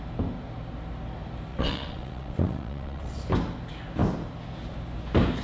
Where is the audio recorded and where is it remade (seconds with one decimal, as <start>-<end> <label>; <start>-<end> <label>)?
0.0-1.5 recorded; 1.5-3.2 remade; 3.2-5.4 recorded